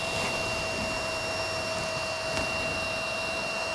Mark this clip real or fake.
real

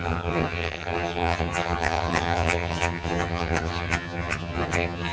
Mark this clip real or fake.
fake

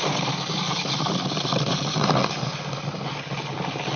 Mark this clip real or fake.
real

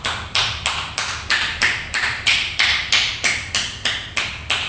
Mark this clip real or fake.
fake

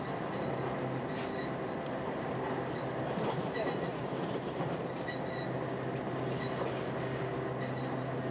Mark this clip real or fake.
real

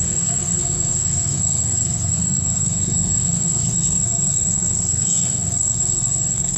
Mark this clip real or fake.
fake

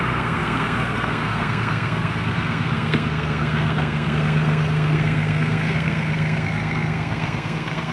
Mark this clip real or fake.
fake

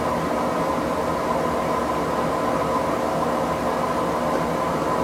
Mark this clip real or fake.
real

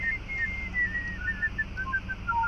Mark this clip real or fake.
real